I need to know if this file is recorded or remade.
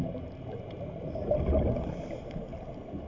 recorded